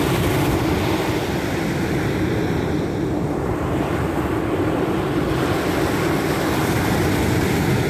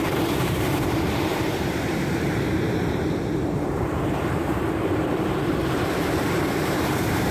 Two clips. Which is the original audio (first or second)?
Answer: first